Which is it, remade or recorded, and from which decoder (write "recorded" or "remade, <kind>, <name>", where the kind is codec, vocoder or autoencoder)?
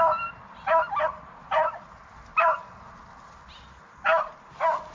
recorded